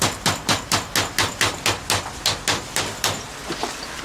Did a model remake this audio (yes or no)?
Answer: no